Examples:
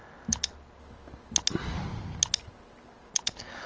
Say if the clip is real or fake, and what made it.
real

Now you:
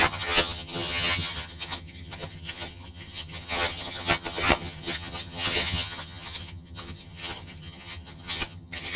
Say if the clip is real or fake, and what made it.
fake, vocoder, HiFi-GAN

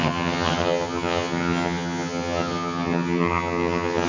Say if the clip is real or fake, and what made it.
fake, vocoder, HiFi-GAN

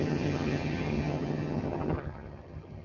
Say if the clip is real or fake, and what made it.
fake, vocoder, HiFi-GAN